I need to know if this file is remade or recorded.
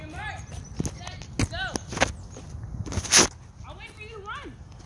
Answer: recorded